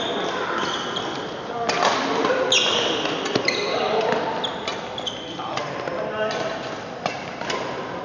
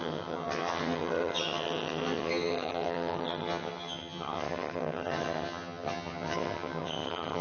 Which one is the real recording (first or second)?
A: first